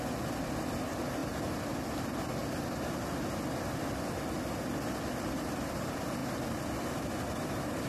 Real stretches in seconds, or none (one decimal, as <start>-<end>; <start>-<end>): 0.0-6.2

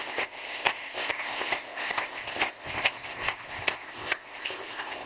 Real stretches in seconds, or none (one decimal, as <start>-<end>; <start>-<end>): none

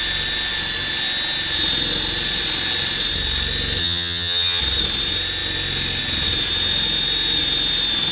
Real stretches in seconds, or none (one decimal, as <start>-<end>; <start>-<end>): 0.0-3.8; 4.6-8.1